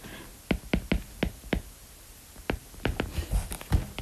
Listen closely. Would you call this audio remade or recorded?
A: recorded